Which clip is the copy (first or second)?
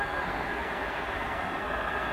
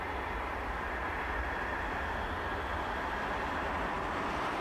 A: first